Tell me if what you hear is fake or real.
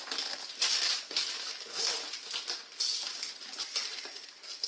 real